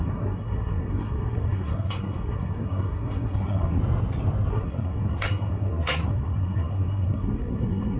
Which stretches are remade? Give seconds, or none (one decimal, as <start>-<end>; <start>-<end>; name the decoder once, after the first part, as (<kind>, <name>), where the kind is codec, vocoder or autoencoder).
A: 0.0-3.8 (codec, SNAC); 4.5-8.0